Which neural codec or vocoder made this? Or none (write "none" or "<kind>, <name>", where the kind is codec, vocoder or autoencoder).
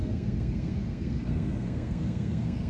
codec, SNAC